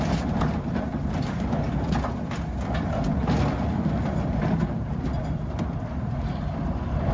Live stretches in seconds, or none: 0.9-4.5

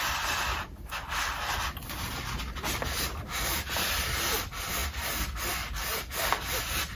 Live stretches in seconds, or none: 0.0-7.0

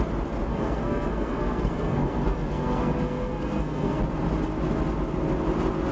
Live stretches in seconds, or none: 0.0-0.5; 4.0-5.9

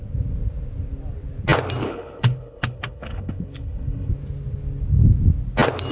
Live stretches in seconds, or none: 0.0-1.8; 4.1-5.9

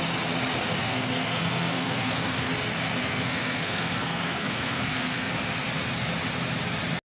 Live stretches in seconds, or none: 0.0-0.8; 2.5-3.0; 5.3-7.1

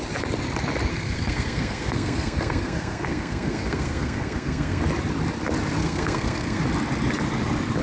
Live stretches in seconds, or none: 0.0-0.9; 4.8-5.8; 6.6-7.8

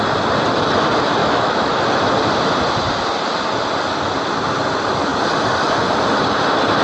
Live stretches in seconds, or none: 0.0-1.2; 1.8-6.8

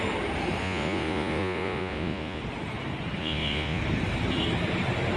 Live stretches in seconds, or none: 0.0-0.6; 2.4-3.2; 3.8-5.2